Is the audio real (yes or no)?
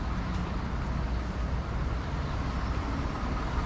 yes